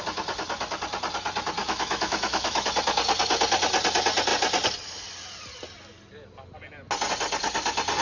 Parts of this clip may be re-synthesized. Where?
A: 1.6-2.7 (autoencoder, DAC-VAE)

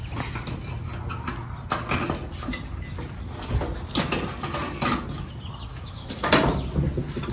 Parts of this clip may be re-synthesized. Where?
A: 5.7-6.3 (autoencoder, DAC-VAE)

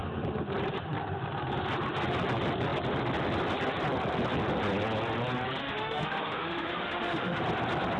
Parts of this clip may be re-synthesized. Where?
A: 5.6-7.4 (autoencoder, DAC-VAE)